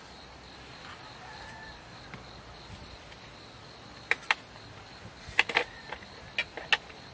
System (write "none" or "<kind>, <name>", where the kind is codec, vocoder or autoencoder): none